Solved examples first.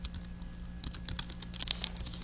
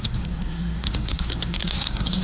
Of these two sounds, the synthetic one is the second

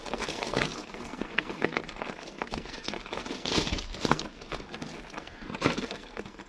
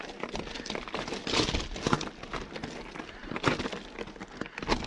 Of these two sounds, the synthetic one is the first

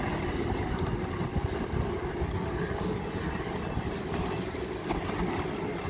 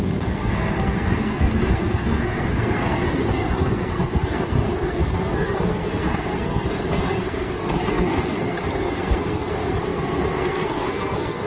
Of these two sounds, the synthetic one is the second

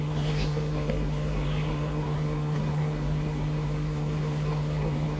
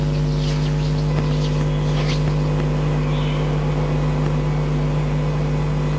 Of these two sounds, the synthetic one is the first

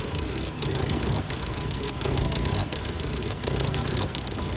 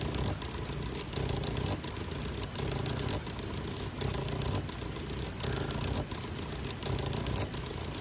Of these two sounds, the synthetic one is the first